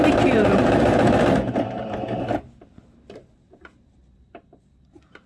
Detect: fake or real fake